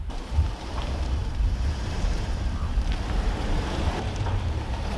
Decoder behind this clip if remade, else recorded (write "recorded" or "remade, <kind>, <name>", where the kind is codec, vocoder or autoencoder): remade, vocoder, BigVGAN v2